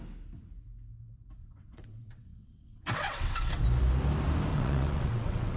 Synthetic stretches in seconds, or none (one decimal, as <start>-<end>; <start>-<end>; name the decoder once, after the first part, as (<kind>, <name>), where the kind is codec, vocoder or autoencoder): 1.4-3.6 (vocoder, WaveNeXt); 4.5-5.6